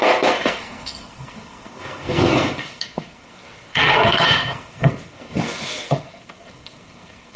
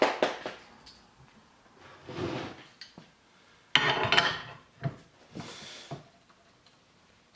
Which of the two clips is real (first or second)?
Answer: second